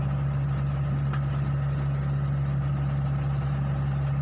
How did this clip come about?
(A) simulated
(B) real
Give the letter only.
B